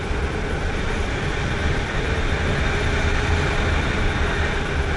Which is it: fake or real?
real